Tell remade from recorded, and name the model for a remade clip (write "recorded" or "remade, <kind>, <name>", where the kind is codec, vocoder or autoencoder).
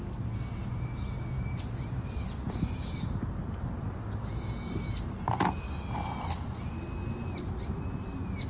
recorded